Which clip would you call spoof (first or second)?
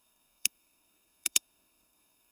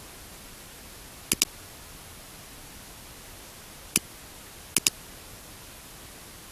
first